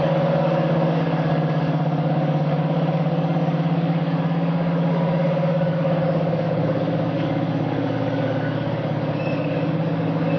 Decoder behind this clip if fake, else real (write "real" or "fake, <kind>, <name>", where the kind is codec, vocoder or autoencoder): fake, codec, DAC